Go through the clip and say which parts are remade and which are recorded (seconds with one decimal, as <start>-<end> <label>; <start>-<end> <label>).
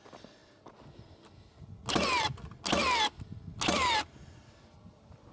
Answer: 0.0-5.3 recorded